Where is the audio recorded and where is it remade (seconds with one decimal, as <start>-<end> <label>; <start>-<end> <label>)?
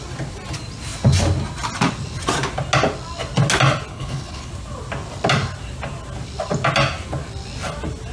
0.0-3.9 recorded; 3.9-4.5 remade; 4.5-8.1 recorded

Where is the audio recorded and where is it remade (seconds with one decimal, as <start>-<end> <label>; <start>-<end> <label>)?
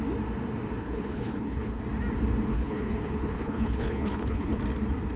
0.0-0.8 recorded; 0.8-1.8 remade; 1.8-2.5 recorded; 2.5-4.6 remade; 4.6-5.2 recorded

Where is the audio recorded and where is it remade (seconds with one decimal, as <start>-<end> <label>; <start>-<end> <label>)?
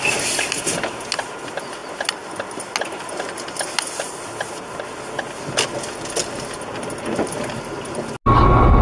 0.0-8.8 recorded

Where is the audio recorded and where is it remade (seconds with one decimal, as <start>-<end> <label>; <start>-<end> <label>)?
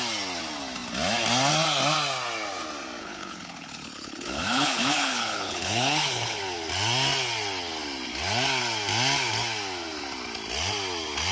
0.0-3.0 recorded; 3.0-6.4 remade; 6.4-11.3 recorded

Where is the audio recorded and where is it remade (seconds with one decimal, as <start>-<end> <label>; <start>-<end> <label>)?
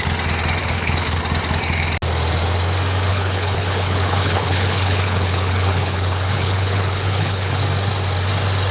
0.0-0.6 recorded; 0.6-1.2 remade; 1.2-3.1 recorded; 3.1-7.6 remade; 7.6-8.7 recorded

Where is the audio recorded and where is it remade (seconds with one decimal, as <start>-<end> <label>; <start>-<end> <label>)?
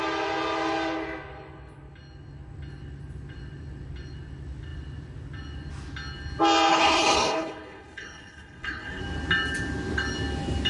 0.0-6.7 recorded; 6.7-9.0 remade; 9.0-10.7 recorded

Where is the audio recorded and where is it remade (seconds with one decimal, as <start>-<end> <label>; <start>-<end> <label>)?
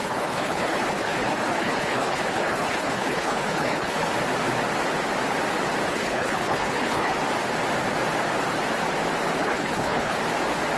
0.0-4.1 remade; 4.1-5.9 recorded; 5.9-7.2 remade; 7.2-9.4 recorded; 9.4-10.2 remade; 10.2-10.8 recorded